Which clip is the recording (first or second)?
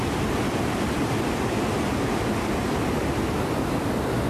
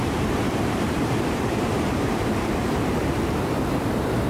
first